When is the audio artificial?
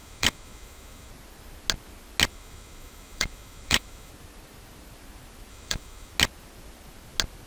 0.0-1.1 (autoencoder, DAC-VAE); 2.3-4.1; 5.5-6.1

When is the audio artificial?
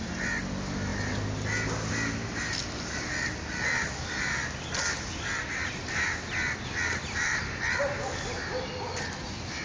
none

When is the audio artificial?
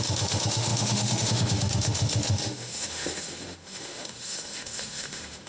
0.0-5.5 (autoencoder, DAC-VAE)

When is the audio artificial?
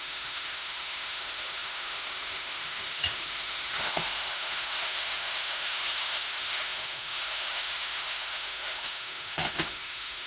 0.0-10.3 (autoencoder, DAC-VAE)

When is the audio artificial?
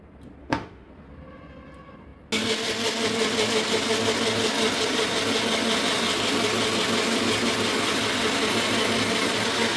0.4-0.9 (autoencoder, DAC-VAE)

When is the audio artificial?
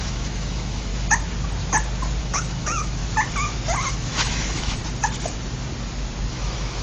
0.0-0.9 (autoencoder, DAC-VAE); 2.2-3.0; 3.9-4.8; 6.3-6.8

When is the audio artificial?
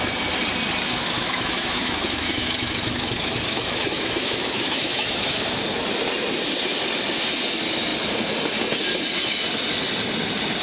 1.0-5.4 (autoencoder, DAC-VAE)